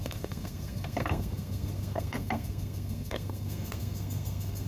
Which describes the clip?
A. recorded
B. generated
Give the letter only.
B